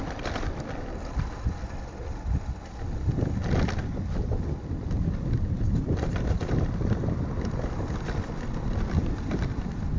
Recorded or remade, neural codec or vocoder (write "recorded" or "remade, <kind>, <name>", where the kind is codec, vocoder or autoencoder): recorded